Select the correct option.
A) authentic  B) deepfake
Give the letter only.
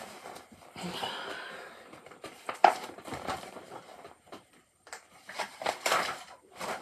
B